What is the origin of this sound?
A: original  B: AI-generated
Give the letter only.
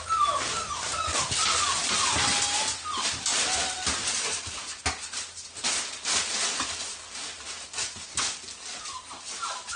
A